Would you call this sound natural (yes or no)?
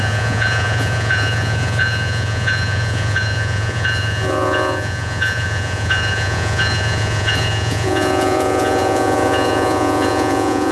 no